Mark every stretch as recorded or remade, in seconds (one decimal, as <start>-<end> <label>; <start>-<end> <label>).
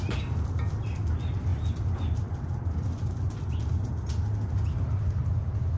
0.0-5.8 recorded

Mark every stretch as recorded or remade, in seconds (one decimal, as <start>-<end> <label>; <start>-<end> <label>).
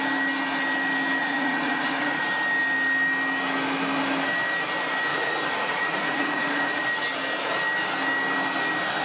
0.0-1.2 recorded; 1.2-2.2 remade; 2.2-5.1 recorded; 5.1-6.8 remade; 6.8-9.0 recorded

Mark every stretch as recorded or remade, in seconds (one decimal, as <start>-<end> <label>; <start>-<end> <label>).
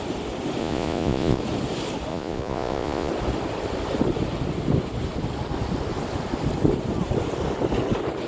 0.0-0.6 recorded; 0.6-1.4 remade; 1.4-2.1 recorded; 2.1-3.1 remade; 3.1-8.3 recorded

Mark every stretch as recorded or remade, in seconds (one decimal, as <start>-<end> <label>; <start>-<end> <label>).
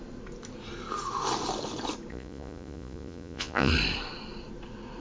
0.0-2.1 recorded; 2.1-3.7 remade; 3.7-5.0 recorded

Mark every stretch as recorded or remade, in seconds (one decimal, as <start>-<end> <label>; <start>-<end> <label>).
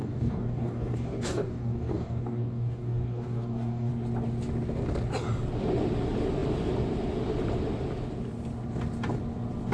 0.0-3.9 remade; 3.9-9.7 recorded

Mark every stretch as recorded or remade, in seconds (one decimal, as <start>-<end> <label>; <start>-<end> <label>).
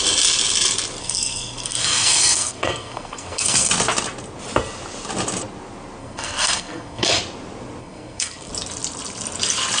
0.0-1.0 recorded; 1.0-3.7 remade; 3.7-6.0 recorded; 6.0-7.2 remade; 7.2-7.8 recorded; 7.8-8.5 remade; 8.5-9.8 recorded